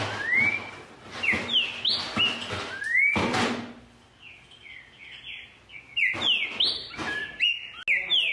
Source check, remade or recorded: recorded